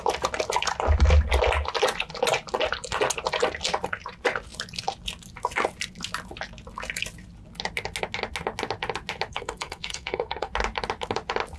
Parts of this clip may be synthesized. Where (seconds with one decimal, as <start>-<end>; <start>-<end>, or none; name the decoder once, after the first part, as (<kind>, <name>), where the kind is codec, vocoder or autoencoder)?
9.3-10.5 (codec, SNAC)